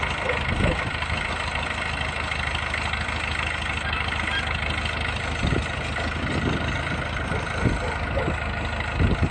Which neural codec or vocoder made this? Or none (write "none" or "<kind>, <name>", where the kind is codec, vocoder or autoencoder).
none